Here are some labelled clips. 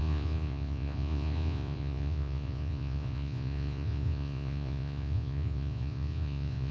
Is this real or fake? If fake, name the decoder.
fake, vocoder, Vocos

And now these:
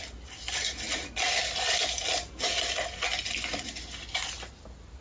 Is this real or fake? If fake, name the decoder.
real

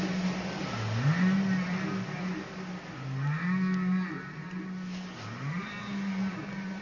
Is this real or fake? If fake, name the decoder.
real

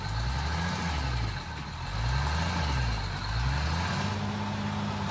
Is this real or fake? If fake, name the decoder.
real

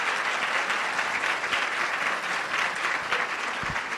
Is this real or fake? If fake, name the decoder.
real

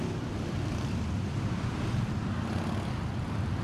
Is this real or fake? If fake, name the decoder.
real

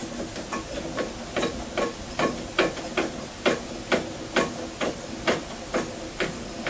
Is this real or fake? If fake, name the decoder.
real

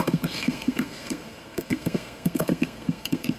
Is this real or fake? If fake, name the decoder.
fake, codec, SNAC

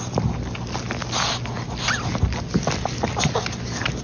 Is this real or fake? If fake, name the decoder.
real